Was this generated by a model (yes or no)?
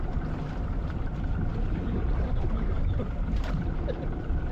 yes